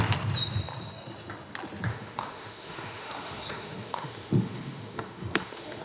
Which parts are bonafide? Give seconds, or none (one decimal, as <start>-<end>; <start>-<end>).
0.0-1.9